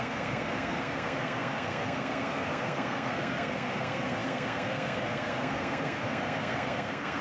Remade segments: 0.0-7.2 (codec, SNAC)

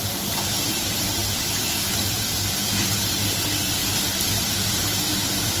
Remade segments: 0.0-1.2 (vocoder, BigVGAN v2); 3.3-3.8; 4.5-5.6

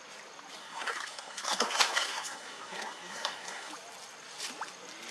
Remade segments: 0.6-3.7 (codec, SNAC)

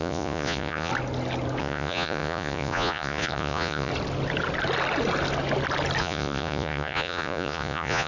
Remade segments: 0.0-0.9 (vocoder, Vocos); 1.6-3.9; 6.0-8.1

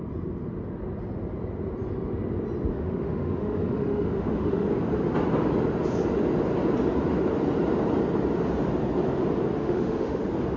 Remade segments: 2.7-4.7 (autoencoder, DAC-VAE); 9.6-10.2

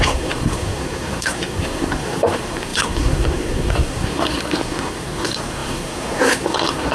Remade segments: 0.0-6.9 (codec, SNAC)

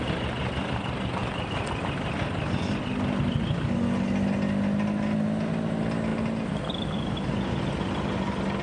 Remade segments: none